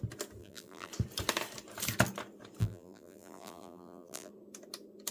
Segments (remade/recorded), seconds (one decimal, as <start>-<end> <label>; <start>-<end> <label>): 0.0-0.4 recorded; 0.4-0.9 remade; 0.9-2.6 recorded; 2.6-4.3 remade; 4.3-5.1 recorded